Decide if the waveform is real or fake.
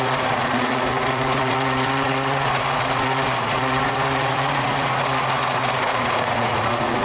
fake